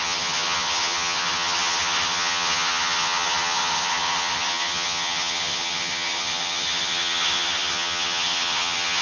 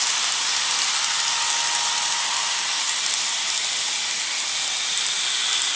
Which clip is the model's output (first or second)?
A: first